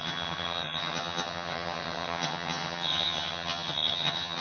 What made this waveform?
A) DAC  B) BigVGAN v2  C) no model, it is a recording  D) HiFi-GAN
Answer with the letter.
D